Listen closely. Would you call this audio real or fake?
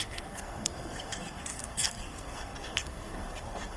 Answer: fake